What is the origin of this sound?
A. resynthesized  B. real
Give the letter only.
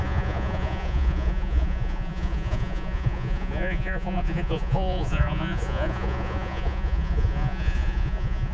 A